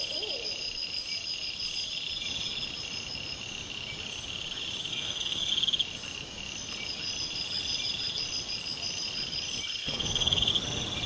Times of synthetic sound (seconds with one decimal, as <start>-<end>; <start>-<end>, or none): 4.9-5.5; 9.8-10.5